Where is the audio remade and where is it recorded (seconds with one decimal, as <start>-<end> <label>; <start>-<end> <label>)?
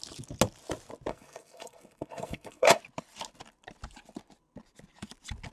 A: 0.0-1.1 recorded; 1.1-2.8 remade; 2.8-5.5 recorded